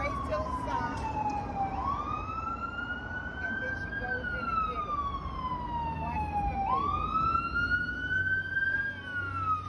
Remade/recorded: recorded